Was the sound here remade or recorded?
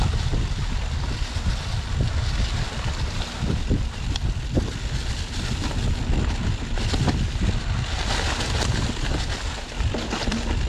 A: recorded